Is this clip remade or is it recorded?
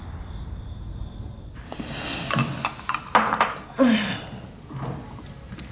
recorded